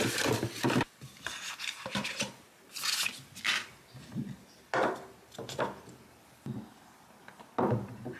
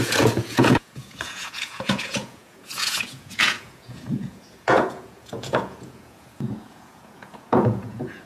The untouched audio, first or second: first